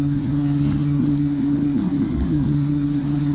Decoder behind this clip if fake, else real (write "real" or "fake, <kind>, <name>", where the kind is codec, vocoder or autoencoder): fake, codec, SNAC